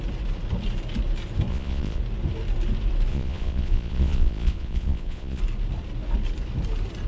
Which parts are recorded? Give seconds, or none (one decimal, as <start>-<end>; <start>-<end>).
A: 0.0-1.5; 2.0-3.1; 5.4-7.1